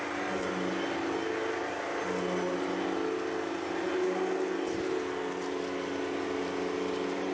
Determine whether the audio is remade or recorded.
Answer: recorded